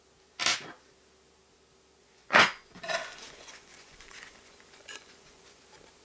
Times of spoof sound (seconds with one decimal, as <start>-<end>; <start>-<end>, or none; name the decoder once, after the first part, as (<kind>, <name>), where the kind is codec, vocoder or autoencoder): 2.0-5.6 (vocoder, Vocos)